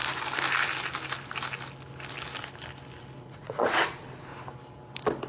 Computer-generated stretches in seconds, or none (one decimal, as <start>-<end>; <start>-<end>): 3.2-4.3